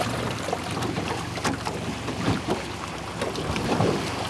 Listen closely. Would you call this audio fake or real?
real